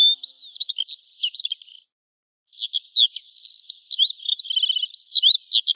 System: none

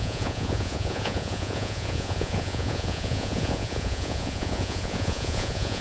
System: vocoder, Vocos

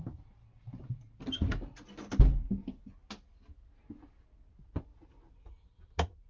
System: none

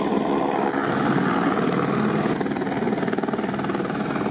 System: none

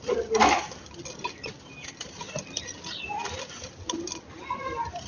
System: none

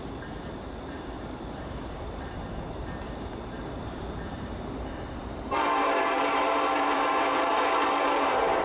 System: vocoder, BigVGAN v2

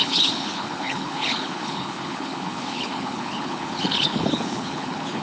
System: codec, HILCodec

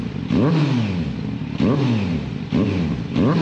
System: none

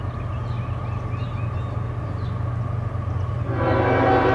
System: none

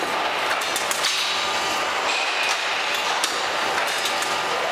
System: none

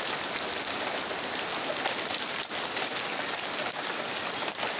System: none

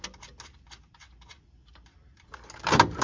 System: none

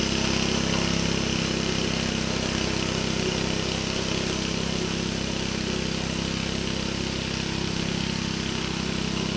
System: none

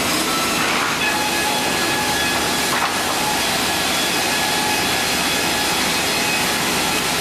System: none